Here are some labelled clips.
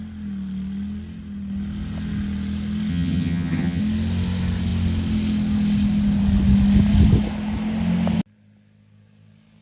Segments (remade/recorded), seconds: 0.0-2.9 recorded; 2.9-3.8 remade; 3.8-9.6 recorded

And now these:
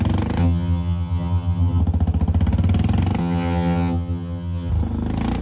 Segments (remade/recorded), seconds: 0.0-0.4 recorded; 0.4-1.8 remade; 1.8-3.2 recorded; 3.2-4.7 remade; 4.7-5.4 recorded

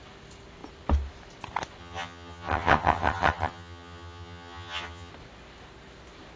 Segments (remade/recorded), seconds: 0.0-1.8 recorded; 1.8-5.1 remade; 5.1-6.4 recorded

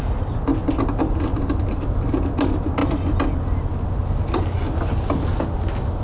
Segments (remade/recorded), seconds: 0.0-6.0 recorded

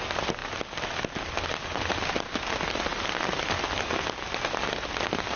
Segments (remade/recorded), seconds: 0.0-5.4 recorded

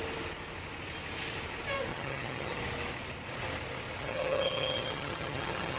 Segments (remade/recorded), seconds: 0.0-1.9 recorded; 1.9-2.6 remade; 2.6-4.0 recorded; 4.0-5.8 remade

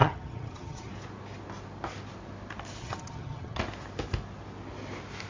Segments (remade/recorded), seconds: 0.0-0.9 remade; 0.9-2.8 recorded; 2.8-3.6 remade; 3.6-5.3 recorded

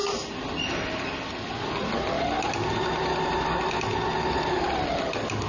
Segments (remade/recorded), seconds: 0.0-5.5 recorded